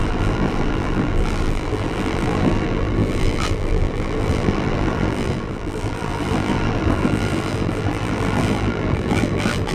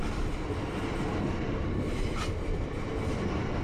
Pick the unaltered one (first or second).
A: second